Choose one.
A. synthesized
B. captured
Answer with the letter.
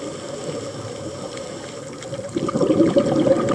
B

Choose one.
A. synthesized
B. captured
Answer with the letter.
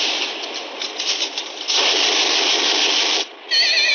B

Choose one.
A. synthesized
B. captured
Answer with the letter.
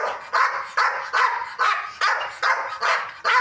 B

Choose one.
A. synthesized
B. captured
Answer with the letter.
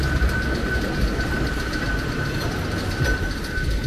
B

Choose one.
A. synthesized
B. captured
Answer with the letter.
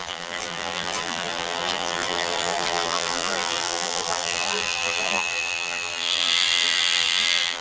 A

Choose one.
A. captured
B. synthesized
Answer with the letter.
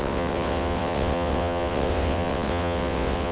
B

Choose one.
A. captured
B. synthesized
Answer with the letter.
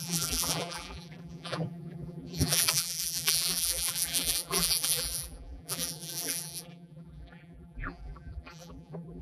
B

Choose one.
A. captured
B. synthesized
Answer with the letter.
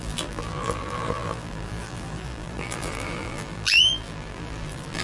B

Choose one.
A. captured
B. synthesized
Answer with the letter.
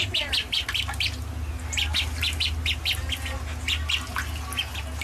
A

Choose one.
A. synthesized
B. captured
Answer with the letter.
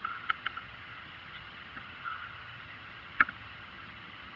A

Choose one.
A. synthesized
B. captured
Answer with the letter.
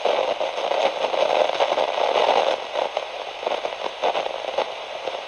B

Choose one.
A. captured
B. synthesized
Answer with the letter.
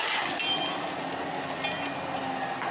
A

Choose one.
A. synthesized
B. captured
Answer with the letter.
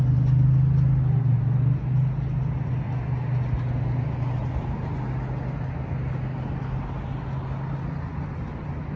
B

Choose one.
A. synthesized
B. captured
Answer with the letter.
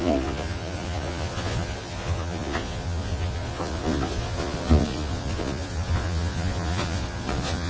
A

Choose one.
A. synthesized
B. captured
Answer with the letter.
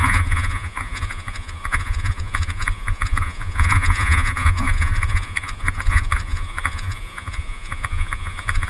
A